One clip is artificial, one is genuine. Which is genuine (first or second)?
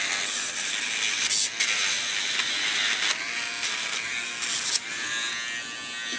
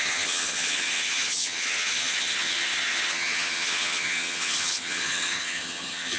first